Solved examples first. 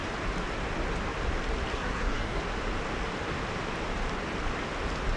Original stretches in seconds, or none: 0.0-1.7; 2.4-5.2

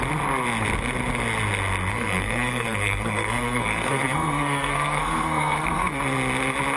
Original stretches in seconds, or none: 0.0-1.9; 6.0-6.8